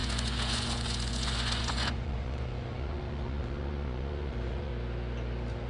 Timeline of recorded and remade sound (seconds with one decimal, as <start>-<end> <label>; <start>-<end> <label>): 0.0-4.7 remade; 4.7-5.7 recorded

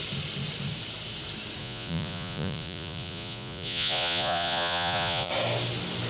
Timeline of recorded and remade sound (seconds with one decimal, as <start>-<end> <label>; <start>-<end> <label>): 0.0-1.6 recorded; 1.6-5.3 remade; 5.3-6.1 recorded

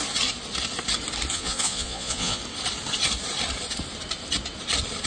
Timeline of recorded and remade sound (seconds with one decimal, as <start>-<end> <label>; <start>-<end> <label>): 0.0-1.3 recorded; 1.3-2.4 remade; 2.4-5.1 recorded

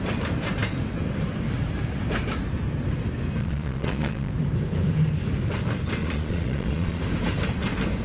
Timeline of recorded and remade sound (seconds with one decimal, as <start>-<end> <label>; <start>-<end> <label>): 0.0-3.4 recorded; 3.4-4.3 remade; 4.3-6.0 recorded; 6.0-7.0 remade; 7.0-8.0 recorded

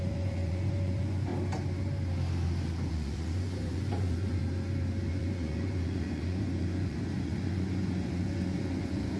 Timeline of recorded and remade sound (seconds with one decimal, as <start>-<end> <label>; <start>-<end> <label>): 0.0-1.3 remade; 1.3-2.9 recorded; 2.9-4.4 remade; 4.4-5.1 recorded; 5.1-9.2 remade

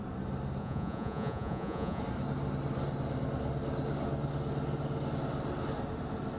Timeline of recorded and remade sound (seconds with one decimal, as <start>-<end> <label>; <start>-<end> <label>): 0.0-0.6 recorded; 0.6-2.0 remade; 2.0-6.4 recorded

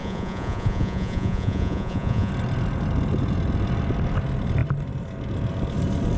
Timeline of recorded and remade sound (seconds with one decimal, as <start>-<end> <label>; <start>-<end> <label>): 0.0-2.3 remade; 2.3-6.2 recorded